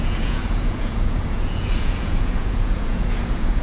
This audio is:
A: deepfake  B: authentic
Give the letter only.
A